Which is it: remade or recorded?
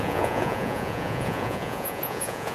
remade